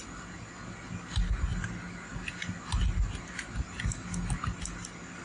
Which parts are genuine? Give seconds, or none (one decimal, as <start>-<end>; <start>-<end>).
0.0-5.2